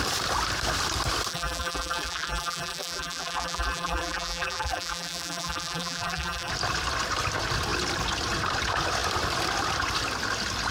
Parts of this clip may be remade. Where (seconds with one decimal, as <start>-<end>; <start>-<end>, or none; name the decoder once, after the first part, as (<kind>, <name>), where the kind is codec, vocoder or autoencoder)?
1.3-6.5 (vocoder, BigVGAN v2)

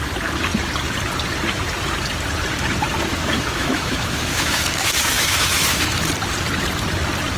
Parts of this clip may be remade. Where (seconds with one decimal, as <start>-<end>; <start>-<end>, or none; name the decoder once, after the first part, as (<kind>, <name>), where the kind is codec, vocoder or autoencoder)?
3.1-6.0 (autoencoder, DAC-VAE)

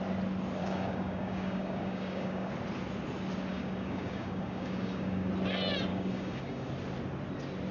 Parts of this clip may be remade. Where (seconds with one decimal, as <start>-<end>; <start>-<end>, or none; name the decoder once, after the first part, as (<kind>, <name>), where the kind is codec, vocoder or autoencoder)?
0.6-2.5 (codec, DAC); 3.5-5.3; 5.9-6.7

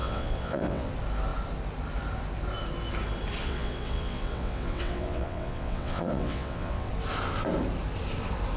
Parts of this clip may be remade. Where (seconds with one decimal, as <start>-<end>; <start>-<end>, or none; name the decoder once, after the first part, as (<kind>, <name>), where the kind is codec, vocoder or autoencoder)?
0.0-0.9 (vocoder, WaveNeXt); 3.4-6.9

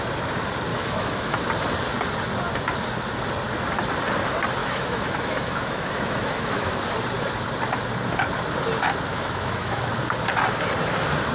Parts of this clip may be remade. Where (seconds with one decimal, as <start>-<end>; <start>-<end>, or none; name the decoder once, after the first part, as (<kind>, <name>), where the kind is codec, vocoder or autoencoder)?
0.7-1.4 (autoencoder, DAC-VAE); 4.6-6.8; 9.1-9.8

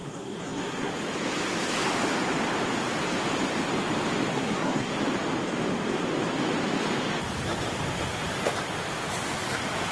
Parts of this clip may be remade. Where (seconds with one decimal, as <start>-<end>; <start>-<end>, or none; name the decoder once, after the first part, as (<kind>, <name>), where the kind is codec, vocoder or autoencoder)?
0.0-0.9 (codec, SNAC); 4.3-4.9